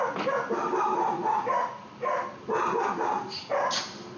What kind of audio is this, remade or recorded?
recorded